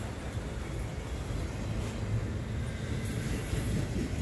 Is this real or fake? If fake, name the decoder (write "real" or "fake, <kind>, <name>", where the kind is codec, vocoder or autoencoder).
real